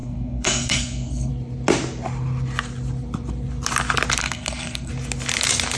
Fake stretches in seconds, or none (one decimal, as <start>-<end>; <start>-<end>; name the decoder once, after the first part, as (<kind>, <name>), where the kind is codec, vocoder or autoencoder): 0.0-1.3 (codec, SNAC); 4.2-4.9